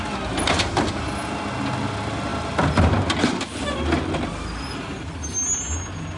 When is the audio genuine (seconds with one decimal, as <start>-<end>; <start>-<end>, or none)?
0.0-6.2